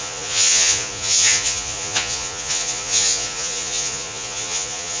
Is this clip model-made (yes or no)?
yes